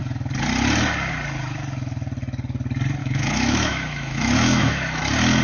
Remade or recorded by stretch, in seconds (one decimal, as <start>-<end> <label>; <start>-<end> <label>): 0.0-3.0 recorded; 3.0-5.0 remade; 5.0-5.4 recorded